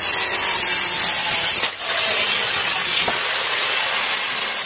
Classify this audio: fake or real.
real